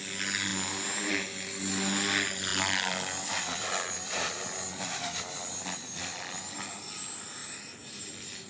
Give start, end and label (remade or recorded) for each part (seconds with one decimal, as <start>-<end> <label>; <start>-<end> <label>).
0.0-2.5 recorded; 2.5-6.3 remade; 6.3-8.5 recorded